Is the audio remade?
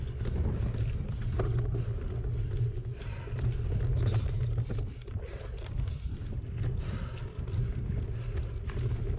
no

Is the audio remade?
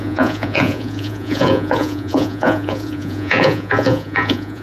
yes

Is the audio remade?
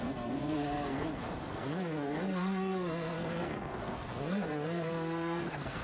yes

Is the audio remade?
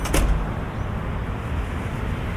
no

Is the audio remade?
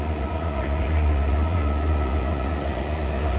yes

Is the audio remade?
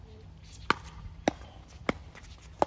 no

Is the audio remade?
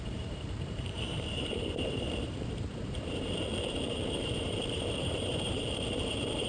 yes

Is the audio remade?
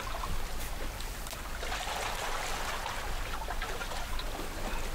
no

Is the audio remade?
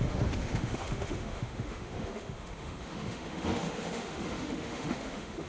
yes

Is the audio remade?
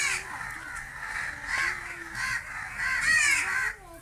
no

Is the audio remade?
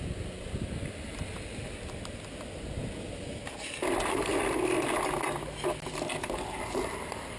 no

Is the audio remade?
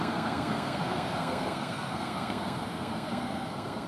yes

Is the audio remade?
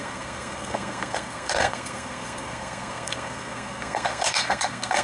yes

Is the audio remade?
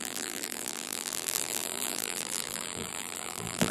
yes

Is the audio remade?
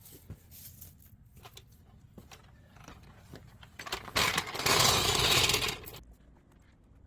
no